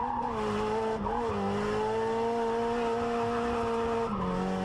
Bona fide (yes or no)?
yes